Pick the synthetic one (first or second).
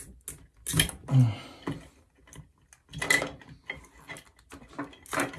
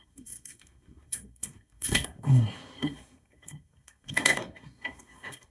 second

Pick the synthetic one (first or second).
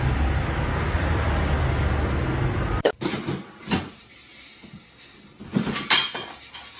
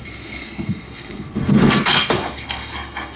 second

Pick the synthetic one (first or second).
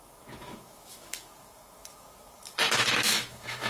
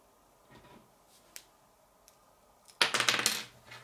first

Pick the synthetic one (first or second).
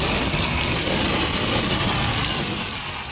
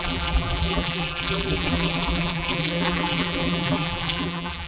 second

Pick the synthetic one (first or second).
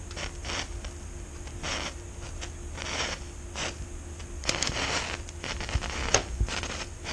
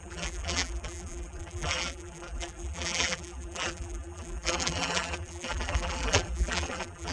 second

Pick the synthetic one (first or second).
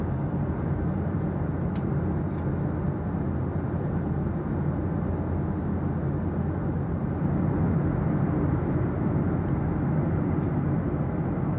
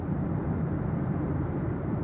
second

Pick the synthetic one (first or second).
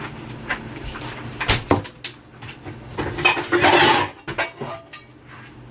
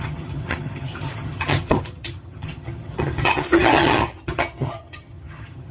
second